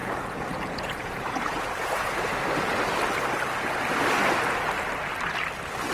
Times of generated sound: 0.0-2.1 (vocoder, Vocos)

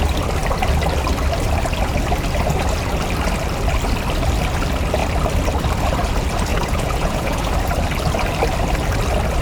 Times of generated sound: 6.5-7.5 (vocoder, Vocos)

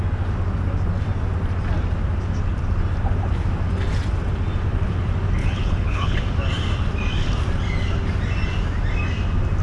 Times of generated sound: 5.4-6.2 (codec, HILCodec)

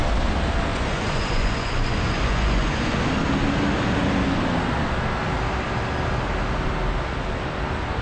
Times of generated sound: 0.7-3.0 (vocoder, Vocos)

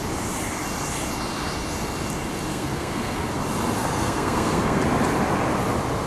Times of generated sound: 2.5-3.3 (codec, SNAC); 3.8-4.8

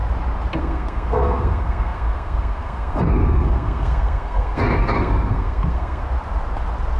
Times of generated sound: 0.6-6.0 (codec, SNAC)

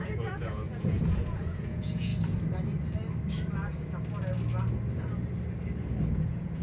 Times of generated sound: 0.0-2.1 (vocoder, Vocos); 6.1-6.6

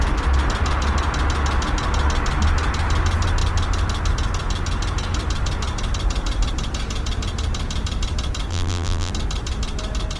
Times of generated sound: 8.5-9.1 (vocoder, BigVGAN v2)